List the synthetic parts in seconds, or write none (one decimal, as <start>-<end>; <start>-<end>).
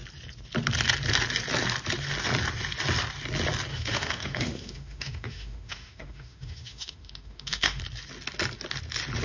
3.7-7.8